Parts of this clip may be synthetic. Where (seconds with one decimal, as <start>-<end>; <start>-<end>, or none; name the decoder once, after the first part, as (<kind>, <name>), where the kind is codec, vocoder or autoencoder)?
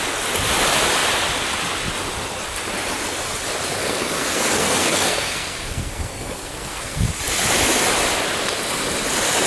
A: 3.8-7.2 (codec, SNAC)